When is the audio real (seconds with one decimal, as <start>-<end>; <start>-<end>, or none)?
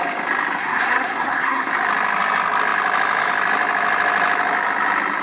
0.0-0.6; 1.7-5.2